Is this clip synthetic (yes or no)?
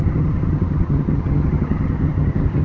yes